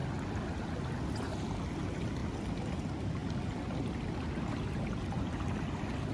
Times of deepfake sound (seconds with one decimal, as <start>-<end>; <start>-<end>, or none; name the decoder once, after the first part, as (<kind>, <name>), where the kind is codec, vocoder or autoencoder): none